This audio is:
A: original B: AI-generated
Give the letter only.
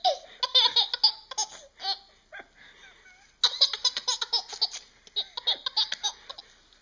A